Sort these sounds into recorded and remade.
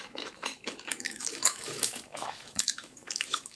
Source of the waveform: remade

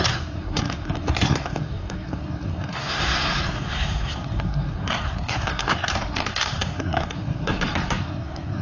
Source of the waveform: remade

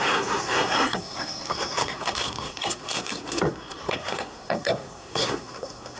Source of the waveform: remade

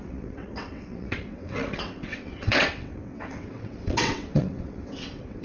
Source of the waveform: remade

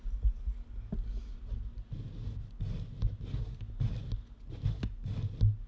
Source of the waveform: recorded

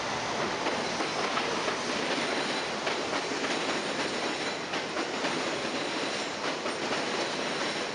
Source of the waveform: recorded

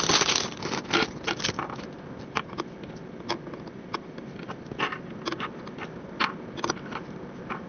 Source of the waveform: recorded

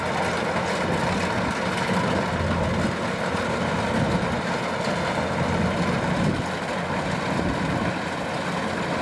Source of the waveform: recorded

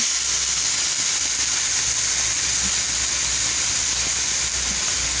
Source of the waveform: recorded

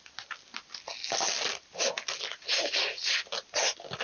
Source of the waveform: recorded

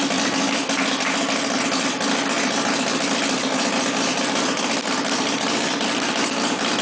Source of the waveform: recorded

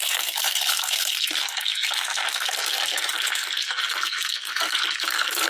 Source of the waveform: remade